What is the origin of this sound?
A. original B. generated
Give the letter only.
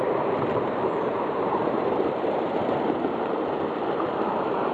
B